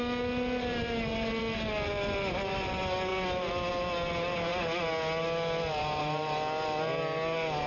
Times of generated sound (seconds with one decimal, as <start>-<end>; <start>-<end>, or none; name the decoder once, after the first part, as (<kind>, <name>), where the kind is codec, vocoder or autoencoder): none